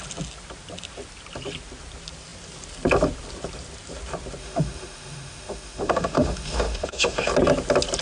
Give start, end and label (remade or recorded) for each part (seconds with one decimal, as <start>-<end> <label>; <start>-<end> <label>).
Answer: 0.0-4.4 recorded; 4.4-7.3 remade; 7.3-8.0 recorded